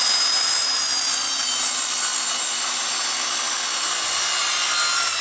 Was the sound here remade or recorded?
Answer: recorded